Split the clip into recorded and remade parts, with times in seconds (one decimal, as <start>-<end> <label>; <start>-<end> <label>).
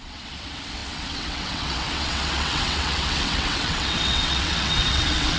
0.0-5.4 remade